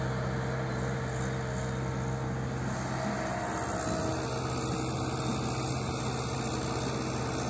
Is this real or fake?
real